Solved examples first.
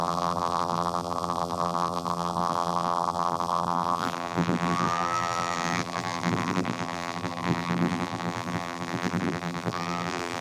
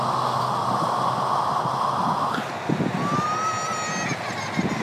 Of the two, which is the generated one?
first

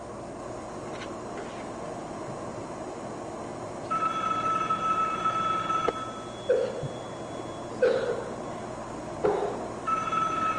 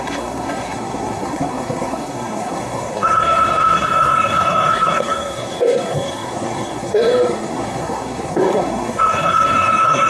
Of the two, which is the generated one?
second